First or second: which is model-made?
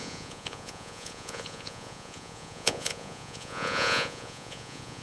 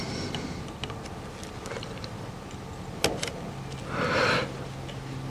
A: first